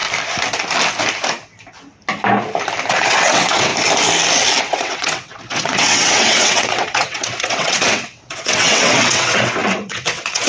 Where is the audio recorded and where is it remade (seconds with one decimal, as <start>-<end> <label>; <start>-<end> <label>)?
0.0-2.9 recorded; 2.9-3.7 remade; 3.7-4.6 recorded; 4.6-10.5 remade